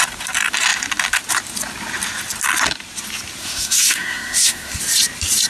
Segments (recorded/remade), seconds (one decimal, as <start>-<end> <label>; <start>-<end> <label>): 0.0-3.4 recorded; 3.4-4.8 remade; 4.8-5.5 recorded